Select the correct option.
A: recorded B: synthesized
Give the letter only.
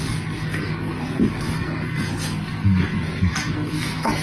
B